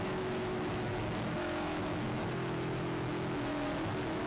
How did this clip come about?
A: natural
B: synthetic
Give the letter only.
B